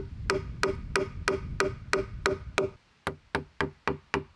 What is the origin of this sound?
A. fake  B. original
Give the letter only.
B